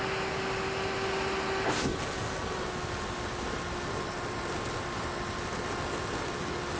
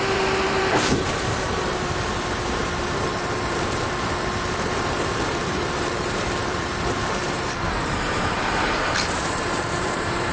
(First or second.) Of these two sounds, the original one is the first